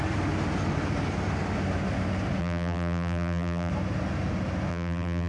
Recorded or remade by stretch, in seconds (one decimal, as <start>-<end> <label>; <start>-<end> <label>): 0.0-2.4 recorded; 2.4-3.7 remade; 3.7-4.7 recorded; 4.7-5.3 remade